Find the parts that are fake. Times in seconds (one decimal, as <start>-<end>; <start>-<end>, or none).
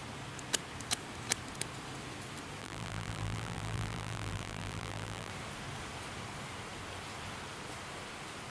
2.6-5.3